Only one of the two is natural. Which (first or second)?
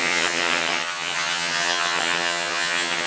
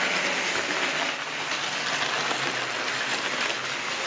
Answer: second